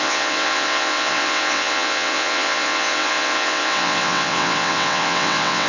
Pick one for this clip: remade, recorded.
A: remade